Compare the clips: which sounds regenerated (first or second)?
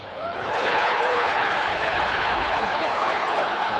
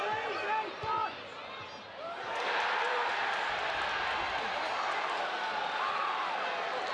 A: first